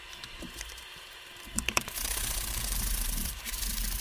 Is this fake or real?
fake